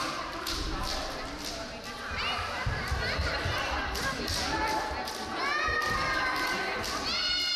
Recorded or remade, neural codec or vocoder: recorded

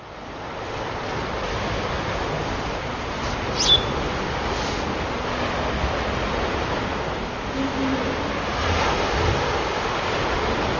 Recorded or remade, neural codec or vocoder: recorded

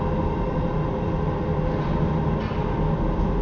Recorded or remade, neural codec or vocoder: recorded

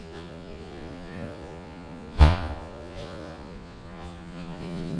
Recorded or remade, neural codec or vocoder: remade, vocoder, Vocos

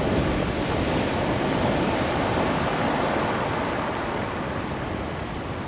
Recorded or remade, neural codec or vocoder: recorded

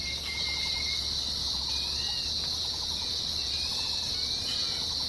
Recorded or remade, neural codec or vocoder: recorded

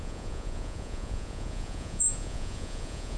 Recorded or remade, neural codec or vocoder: remade, vocoder, Vocos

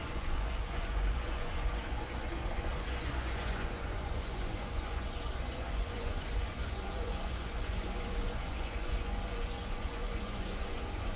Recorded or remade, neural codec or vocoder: remade, vocoder, Vocos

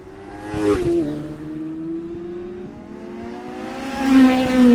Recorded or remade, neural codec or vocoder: recorded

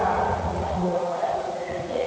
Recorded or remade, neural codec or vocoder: remade, vocoder, Vocos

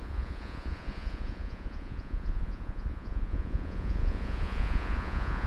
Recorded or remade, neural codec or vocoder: remade, vocoder, Vocos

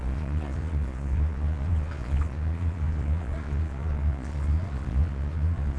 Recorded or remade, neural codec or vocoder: remade, vocoder, Vocos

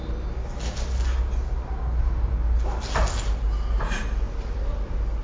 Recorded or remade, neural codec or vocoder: recorded